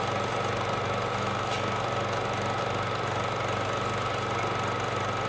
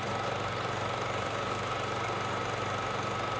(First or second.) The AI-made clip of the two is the second